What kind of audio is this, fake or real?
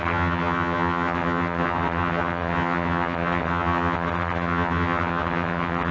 fake